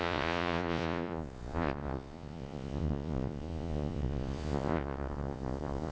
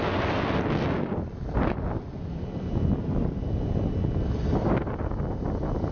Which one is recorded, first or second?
second